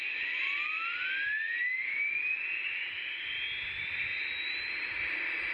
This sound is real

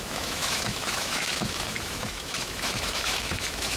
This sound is fake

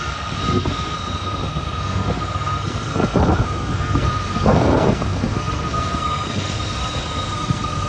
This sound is fake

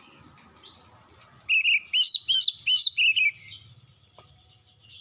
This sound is real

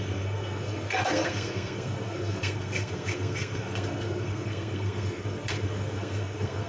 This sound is fake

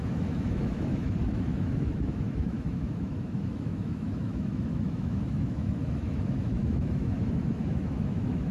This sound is fake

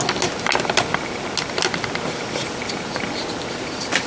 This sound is real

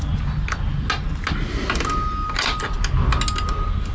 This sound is real